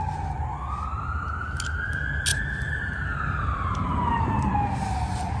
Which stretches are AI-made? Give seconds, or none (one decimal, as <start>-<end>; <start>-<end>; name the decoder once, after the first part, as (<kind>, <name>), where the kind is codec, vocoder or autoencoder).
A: 2.3-4.5 (vocoder, BigVGAN v2)